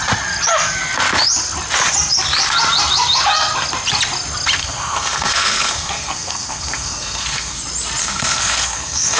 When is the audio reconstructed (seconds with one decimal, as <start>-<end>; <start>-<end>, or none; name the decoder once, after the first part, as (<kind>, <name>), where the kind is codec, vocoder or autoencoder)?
4.6-7.6 (codec, SNAC); 8.0-9.2